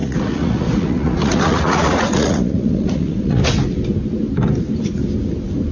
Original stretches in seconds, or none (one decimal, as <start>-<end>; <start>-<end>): 3.4-5.7